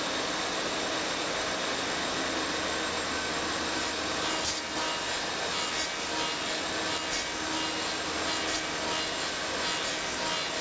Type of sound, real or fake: real